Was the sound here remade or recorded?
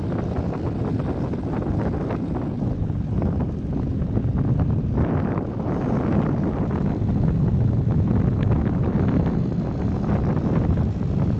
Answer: recorded